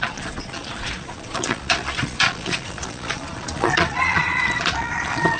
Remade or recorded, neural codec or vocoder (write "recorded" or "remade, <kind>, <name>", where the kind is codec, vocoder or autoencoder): remade, vocoder, Vocos